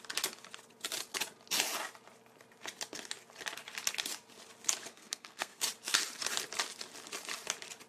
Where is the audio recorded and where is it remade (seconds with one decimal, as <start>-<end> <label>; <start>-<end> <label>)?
0.0-4.9 recorded; 4.9-5.6 remade; 5.6-7.9 recorded